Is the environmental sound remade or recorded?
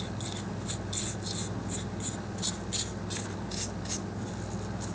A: recorded